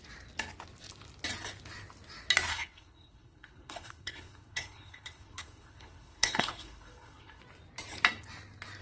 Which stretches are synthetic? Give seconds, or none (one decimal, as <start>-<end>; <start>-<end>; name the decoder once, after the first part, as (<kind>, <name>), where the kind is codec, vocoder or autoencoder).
2.5-7.4 (codec, HILCodec)